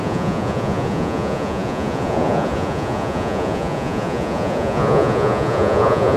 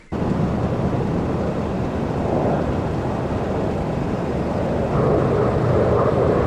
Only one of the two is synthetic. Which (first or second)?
first